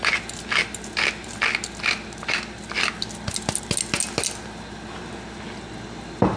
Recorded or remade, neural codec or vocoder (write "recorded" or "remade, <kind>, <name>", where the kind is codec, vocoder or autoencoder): recorded